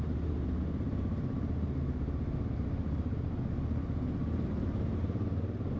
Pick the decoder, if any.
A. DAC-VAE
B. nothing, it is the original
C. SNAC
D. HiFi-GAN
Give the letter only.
B